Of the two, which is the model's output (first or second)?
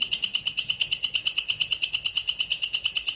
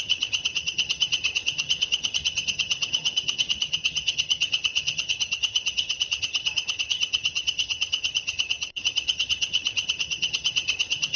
second